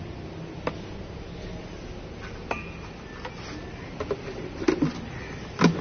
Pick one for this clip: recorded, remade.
recorded